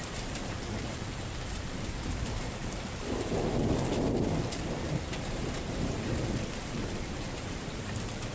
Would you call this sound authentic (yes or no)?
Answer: no